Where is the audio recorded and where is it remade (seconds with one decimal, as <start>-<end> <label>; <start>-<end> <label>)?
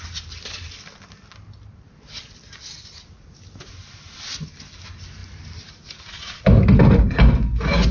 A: 0.0-7.9 recorded